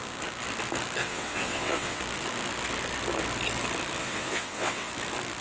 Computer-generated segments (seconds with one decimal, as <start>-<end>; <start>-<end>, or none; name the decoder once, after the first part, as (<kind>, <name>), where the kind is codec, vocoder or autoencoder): 1.0-2.0 (vocoder, WaveNeXt); 4.0-4.9